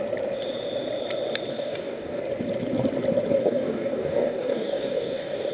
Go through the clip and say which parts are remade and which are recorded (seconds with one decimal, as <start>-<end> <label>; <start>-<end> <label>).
0.0-1.5 recorded; 1.5-2.2 remade; 2.2-3.4 recorded; 3.4-5.5 remade